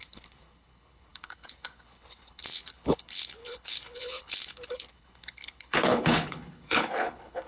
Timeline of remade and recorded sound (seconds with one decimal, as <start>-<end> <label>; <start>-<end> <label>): 0.0-7.5 remade